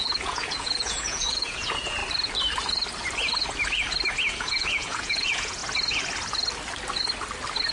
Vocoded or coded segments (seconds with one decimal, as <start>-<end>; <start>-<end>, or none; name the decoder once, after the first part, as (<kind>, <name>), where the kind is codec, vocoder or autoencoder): 0.0-2.0 (vocoder, Vocos); 4.4-5.6